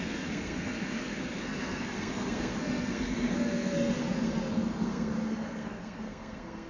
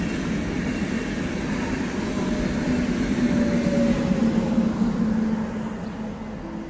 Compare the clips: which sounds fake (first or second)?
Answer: first